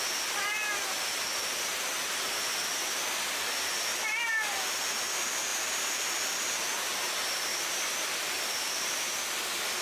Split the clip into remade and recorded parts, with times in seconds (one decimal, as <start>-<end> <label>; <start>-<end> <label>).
0.0-7.5 recorded; 7.5-9.2 remade; 9.2-9.8 recorded